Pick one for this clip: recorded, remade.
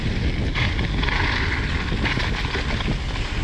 recorded